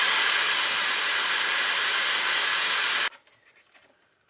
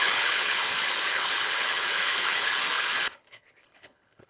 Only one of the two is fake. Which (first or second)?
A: second